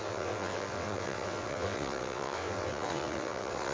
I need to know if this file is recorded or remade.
remade